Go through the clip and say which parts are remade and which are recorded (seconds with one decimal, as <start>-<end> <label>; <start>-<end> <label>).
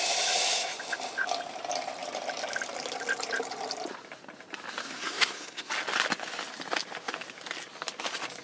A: 0.0-4.8 recorded; 4.8-5.7 remade; 5.7-8.4 recorded